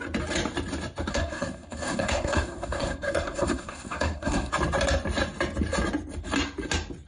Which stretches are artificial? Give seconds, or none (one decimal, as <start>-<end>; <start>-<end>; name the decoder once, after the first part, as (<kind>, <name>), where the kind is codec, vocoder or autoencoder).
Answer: 1.1-4.5 (codec, SNAC)